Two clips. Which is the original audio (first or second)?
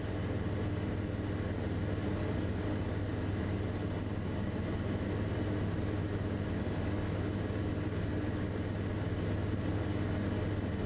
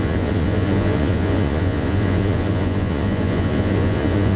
first